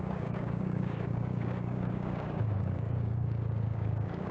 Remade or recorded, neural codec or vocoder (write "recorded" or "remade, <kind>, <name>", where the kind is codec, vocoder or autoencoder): remade, codec, DAC